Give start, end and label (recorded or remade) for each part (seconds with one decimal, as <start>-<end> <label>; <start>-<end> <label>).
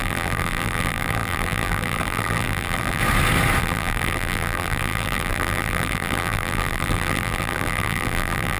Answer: 0.0-3.0 remade; 3.0-3.6 recorded; 3.6-8.6 remade